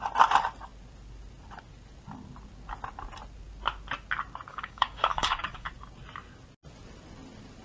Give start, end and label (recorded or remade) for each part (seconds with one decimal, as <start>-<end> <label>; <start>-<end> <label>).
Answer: 0.0-4.5 recorded; 4.5-5.7 remade; 5.7-7.6 recorded